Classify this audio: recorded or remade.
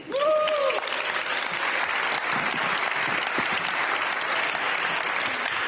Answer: recorded